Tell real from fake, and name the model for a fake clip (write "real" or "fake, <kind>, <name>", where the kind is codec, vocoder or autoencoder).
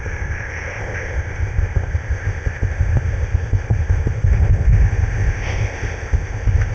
fake, codec, ZipCodec